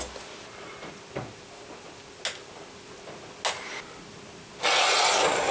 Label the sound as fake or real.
real